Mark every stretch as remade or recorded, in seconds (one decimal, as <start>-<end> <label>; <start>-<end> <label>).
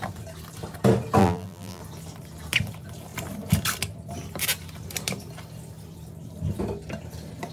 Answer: 0.0-1.2 recorded; 1.2-1.8 remade; 1.8-7.5 recorded